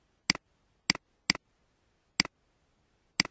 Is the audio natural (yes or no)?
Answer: yes